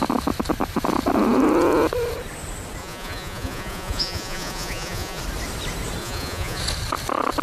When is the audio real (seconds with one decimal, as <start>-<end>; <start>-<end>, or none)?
0.0-2.8; 5.2-6.0; 6.6-7.4

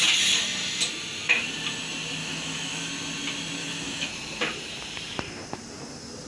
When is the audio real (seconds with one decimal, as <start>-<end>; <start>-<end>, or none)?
0.0-2.2; 2.9-3.6; 4.1-6.3

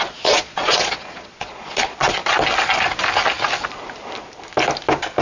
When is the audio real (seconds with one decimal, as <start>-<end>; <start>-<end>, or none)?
2.2-5.2

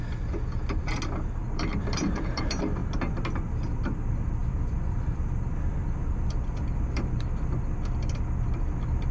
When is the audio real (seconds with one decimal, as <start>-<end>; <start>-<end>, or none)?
0.0-1.4; 2.4-4.4; 5.2-5.7; 7.6-9.1